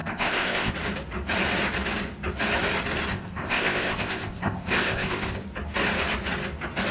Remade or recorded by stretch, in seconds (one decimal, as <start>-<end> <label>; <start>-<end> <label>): 0.0-0.7 remade; 0.7-3.1 recorded; 3.1-5.4 remade; 5.4-6.9 recorded